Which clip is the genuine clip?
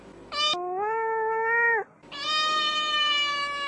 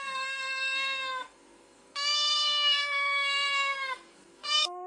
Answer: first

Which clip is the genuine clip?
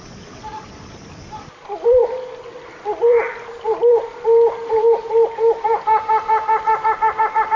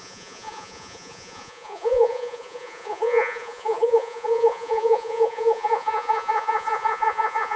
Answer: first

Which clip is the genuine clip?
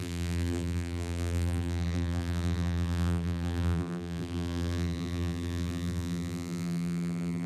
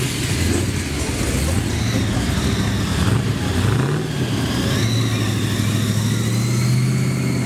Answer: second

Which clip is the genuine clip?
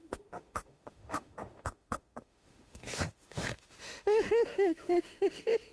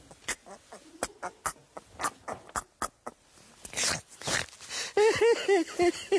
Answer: second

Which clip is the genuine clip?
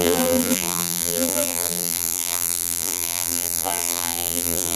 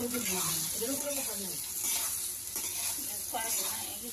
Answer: second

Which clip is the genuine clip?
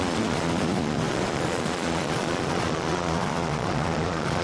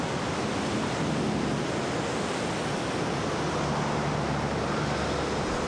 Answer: second